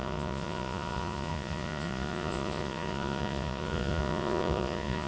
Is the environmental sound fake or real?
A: fake